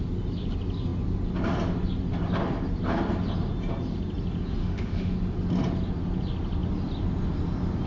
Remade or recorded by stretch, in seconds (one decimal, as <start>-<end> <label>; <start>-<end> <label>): 0.0-4.6 recorded; 4.6-5.1 remade; 5.1-7.9 recorded